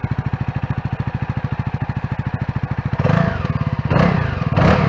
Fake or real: real